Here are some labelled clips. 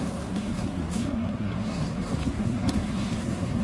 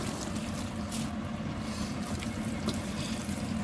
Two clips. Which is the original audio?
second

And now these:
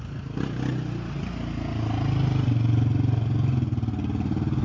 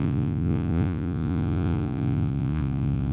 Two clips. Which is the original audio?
first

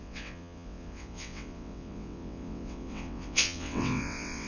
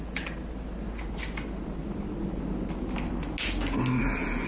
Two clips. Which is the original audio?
second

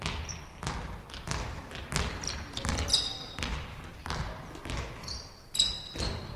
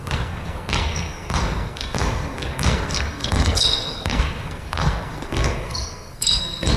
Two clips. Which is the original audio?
first